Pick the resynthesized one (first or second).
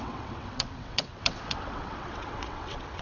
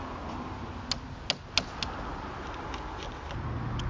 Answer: first